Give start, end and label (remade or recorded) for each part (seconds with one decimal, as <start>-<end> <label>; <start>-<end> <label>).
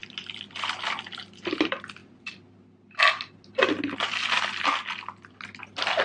0.0-6.0 recorded